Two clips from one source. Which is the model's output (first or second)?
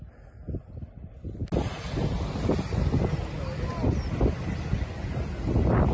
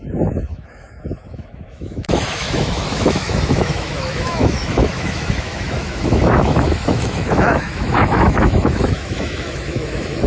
second